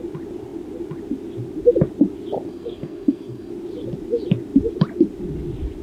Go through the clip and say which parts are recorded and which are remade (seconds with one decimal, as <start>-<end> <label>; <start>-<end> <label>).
0.0-2.5 recorded; 2.5-3.5 remade; 3.5-5.8 recorded